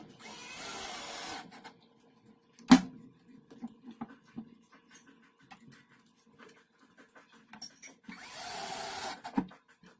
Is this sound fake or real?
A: real